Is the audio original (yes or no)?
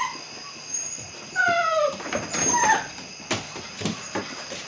yes